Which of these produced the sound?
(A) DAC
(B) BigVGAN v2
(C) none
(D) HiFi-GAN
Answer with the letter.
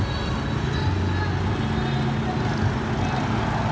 C